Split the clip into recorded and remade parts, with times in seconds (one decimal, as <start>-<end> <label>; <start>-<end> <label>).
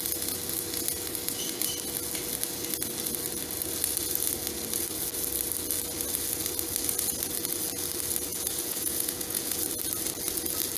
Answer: 0.0-8.3 recorded; 8.3-9.6 remade; 9.6-10.8 recorded